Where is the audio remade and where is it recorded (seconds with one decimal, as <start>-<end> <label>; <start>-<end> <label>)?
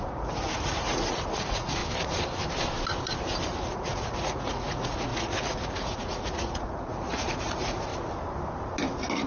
0.0-1.8 remade; 1.8-3.6 recorded; 3.6-7.9 remade; 7.9-9.3 recorded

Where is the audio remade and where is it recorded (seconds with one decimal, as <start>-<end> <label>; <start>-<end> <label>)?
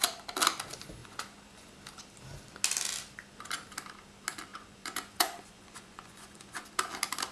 0.0-1.0 recorded; 1.0-1.7 remade; 1.7-4.5 recorded; 4.5-6.7 remade; 6.7-7.3 recorded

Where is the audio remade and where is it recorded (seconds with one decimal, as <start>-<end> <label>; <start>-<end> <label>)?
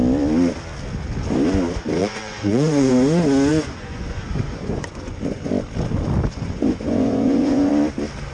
0.0-2.0 recorded; 2.0-2.9 remade; 2.9-3.5 recorded; 3.5-5.5 remade; 5.5-6.3 recorded; 6.3-7.7 remade; 7.7-8.3 recorded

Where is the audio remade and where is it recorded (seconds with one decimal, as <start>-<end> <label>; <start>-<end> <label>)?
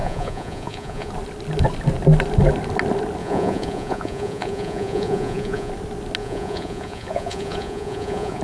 0.0-1.1 remade; 1.1-3.2 recorded; 3.2-5.7 remade; 5.7-6.2 recorded; 6.2-8.4 remade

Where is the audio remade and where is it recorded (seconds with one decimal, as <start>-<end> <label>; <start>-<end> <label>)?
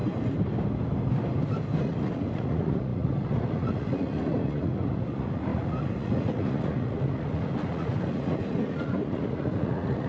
0.0-1.8 recorded; 1.8-10.1 remade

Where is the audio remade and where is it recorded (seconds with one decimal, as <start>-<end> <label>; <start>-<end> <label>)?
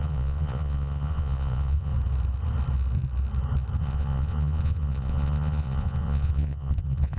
0.0-1.9 remade; 1.9-3.8 recorded; 3.8-7.2 remade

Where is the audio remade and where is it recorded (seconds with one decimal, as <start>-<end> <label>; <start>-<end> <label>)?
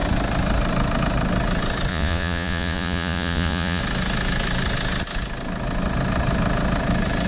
0.0-1.9 recorded; 1.9-3.8 remade; 3.8-7.3 recorded